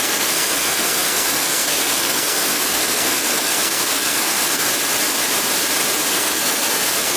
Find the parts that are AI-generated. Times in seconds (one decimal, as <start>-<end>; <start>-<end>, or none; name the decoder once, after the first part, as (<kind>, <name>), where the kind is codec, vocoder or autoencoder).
0.0-4.7 (codec, SNAC); 6.1-7.2